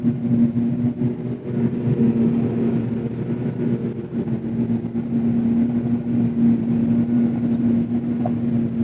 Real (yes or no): yes